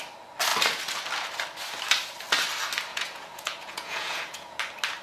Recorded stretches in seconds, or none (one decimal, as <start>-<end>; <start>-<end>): 0.0-2.9; 4.6-5.0